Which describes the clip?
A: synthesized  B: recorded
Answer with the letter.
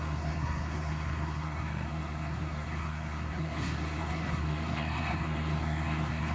A